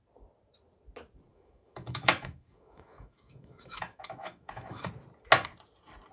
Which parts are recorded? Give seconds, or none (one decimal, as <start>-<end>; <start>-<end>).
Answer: 0.0-1.3; 4.9-6.1